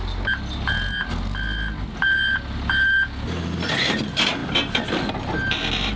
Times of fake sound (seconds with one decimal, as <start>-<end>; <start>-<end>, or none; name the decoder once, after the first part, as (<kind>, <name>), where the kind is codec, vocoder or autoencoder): none